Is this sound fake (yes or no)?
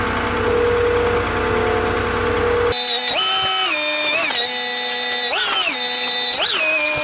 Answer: no